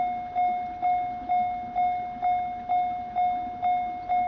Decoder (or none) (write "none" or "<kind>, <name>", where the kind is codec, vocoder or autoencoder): none